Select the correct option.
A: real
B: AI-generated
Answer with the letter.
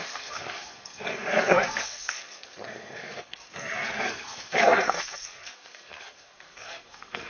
B